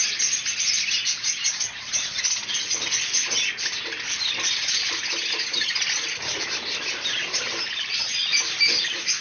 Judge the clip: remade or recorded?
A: recorded